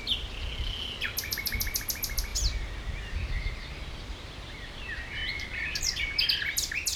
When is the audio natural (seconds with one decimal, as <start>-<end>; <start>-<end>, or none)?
0.0-7.0